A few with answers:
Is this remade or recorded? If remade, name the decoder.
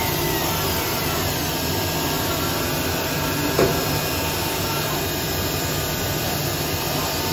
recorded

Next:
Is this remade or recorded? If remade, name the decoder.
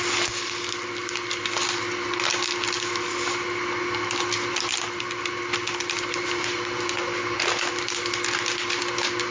recorded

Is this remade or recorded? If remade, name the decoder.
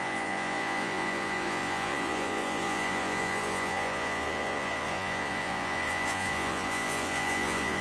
remade, vocoder, Vocos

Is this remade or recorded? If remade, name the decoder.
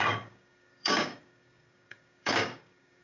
remade, codec, DAC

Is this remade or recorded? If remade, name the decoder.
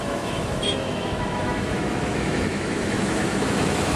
remade, autoencoder, DAC-VAE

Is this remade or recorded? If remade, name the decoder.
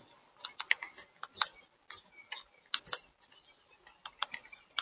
recorded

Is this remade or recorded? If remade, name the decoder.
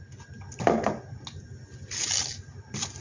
recorded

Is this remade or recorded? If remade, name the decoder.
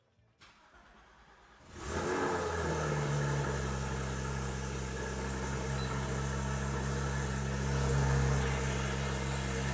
recorded